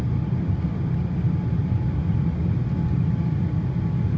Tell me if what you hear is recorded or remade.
recorded